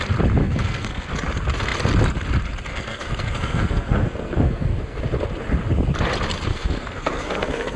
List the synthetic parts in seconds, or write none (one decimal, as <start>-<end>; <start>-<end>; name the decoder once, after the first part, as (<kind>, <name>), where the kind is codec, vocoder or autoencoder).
0.4-1.1 (codec, SNAC); 2.7-5.0; 6.5-7.8